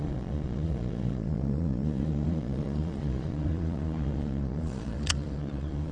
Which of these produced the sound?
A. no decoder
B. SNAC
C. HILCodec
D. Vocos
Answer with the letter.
D